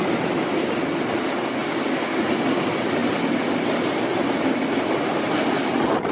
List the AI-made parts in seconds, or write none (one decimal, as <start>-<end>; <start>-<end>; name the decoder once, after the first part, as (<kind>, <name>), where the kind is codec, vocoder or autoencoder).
none